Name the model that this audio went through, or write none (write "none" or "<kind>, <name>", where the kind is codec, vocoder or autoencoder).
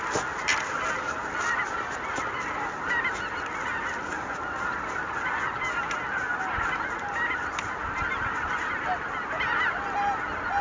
none